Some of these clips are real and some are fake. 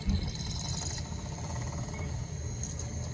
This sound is real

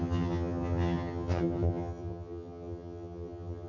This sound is fake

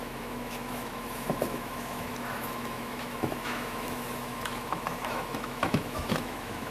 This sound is fake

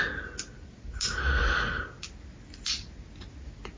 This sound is real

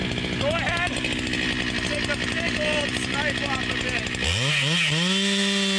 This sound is real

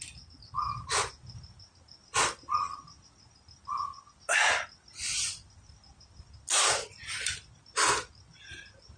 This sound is real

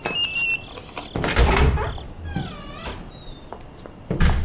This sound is real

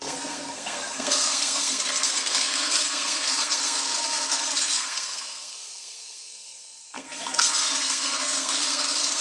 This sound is fake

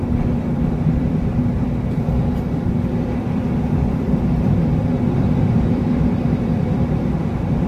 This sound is fake